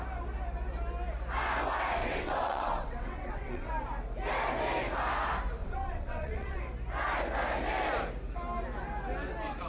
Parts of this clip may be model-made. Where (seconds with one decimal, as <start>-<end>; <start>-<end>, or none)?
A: 2.0-3.7; 5.6-6.6